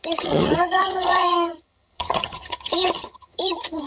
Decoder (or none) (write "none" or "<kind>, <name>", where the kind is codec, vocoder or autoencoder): vocoder, HiFi-GAN